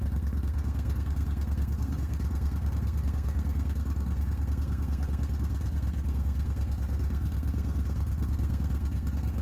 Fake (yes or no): yes